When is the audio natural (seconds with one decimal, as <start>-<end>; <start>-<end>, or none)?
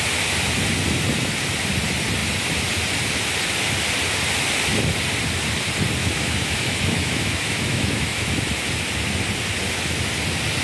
0.0-6.0; 8.4-10.6